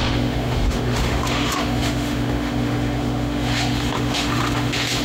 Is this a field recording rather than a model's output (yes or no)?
no